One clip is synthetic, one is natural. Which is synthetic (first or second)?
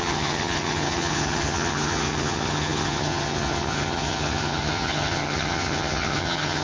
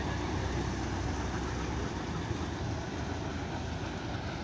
first